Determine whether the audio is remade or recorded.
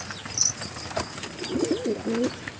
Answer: recorded